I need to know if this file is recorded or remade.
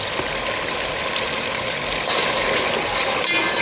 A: recorded